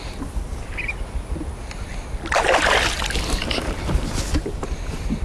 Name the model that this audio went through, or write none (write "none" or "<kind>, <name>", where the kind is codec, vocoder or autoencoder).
none